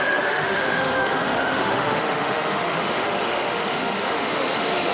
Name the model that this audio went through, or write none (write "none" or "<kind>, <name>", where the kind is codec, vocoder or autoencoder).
autoencoder, DAC-VAE